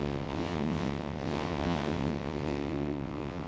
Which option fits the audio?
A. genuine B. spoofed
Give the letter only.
B